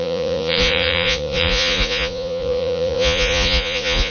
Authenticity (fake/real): fake